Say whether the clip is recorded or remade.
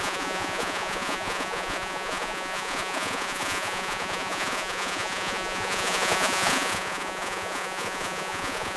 remade